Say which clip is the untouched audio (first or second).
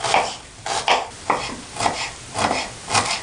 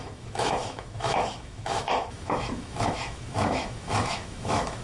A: first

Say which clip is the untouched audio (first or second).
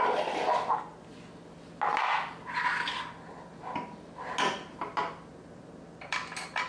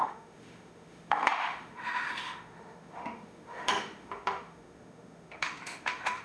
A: first